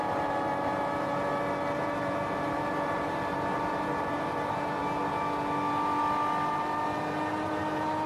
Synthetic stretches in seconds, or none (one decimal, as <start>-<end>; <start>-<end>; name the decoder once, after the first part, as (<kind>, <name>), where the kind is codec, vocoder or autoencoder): 0.0-4.8 (vocoder, BigVGAN v2); 6.5-8.1